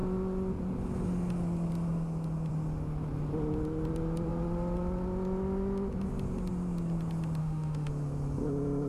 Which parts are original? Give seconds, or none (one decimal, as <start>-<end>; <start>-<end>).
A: 0.0-7.4; 7.9-8.9